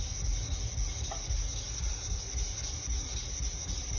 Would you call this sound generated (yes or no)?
no